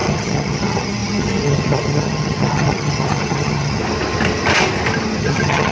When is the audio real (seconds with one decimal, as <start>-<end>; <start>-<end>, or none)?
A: 3.8-5.2